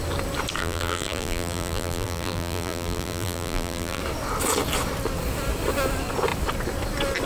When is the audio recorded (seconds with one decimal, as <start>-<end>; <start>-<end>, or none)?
0.0-0.6; 4.0-7.3